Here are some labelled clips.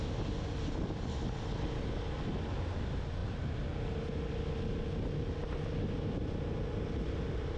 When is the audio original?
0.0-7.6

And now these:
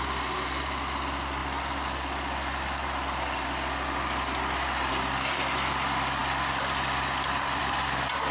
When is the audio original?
0.0-8.3